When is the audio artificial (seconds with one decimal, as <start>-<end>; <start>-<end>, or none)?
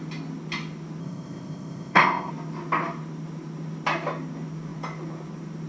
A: 1.0-2.3